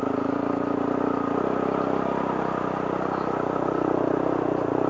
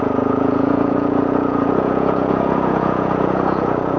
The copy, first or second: second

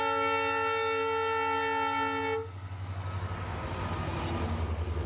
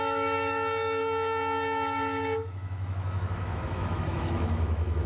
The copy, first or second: second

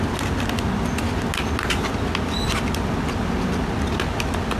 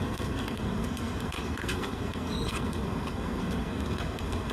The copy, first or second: second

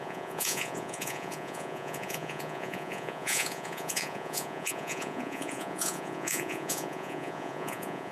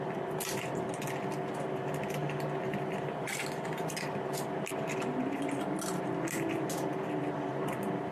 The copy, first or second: first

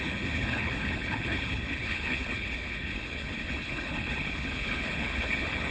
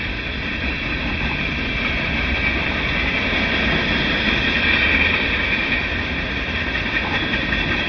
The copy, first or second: first